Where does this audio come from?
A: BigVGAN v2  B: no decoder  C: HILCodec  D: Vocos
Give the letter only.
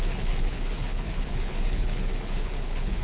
C